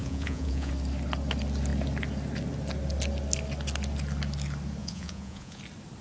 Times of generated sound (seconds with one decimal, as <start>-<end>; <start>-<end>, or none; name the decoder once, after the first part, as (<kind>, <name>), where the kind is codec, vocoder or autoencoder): 0.0-0.7 (vocoder, Vocos); 4.8-5.6